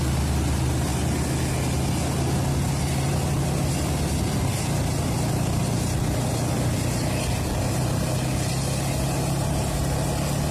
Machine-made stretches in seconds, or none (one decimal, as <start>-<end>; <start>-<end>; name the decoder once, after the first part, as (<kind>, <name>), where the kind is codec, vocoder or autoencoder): none